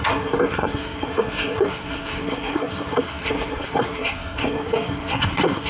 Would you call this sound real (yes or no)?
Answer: no